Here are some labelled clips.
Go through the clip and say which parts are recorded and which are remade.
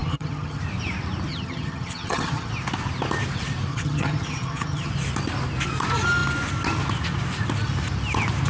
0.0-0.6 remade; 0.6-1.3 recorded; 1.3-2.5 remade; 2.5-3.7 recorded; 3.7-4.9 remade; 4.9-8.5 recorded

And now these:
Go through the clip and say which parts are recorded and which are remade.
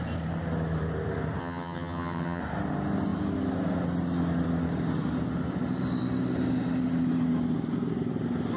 0.0-1.4 recorded; 1.4-2.4 remade; 2.4-8.6 recorded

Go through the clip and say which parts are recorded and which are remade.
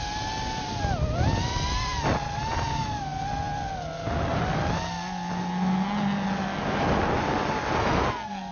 0.0-8.5 recorded